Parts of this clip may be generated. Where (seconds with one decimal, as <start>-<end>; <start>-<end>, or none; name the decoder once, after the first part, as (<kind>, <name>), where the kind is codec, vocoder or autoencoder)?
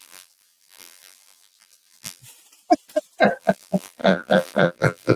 0.0-2.2 (vocoder, BigVGAN v2); 3.4-5.2